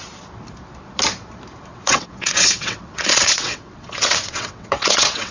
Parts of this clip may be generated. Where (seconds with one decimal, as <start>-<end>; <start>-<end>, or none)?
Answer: 1.7-5.3